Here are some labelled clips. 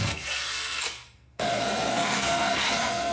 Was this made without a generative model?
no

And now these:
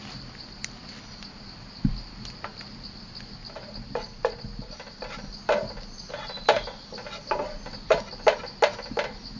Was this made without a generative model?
yes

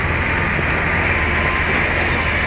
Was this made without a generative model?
yes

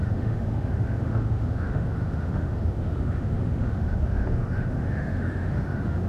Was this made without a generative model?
no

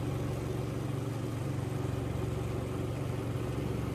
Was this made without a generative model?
yes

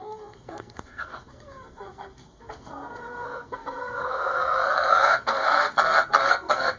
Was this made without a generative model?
no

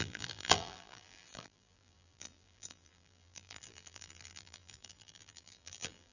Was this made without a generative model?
no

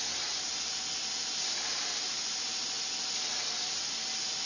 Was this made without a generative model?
yes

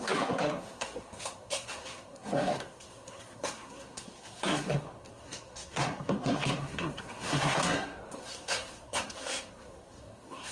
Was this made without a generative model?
no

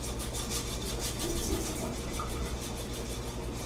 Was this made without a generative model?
yes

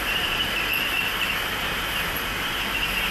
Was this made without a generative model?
no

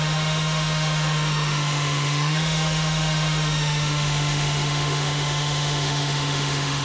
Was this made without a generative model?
no